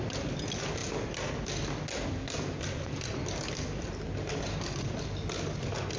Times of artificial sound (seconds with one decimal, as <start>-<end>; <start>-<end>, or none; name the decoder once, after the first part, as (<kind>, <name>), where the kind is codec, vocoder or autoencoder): none